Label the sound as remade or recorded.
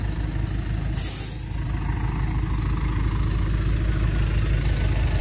recorded